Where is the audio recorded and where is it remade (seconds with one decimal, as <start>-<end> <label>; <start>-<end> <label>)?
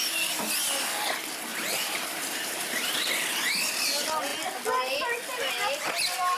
0.0-1.5 recorded; 1.5-3.1 remade; 3.1-6.4 recorded